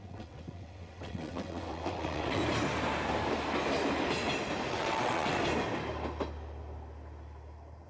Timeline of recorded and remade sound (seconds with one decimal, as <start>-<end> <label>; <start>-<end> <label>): 0.0-2.4 remade; 2.4-4.7 recorded; 4.7-5.4 remade; 5.4-7.9 recorded